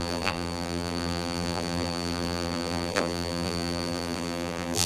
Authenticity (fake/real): fake